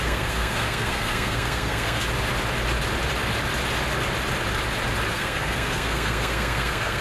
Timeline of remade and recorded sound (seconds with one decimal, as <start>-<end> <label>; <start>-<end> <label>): 0.0-2.0 remade; 2.0-5.1 recorded; 5.1-7.0 remade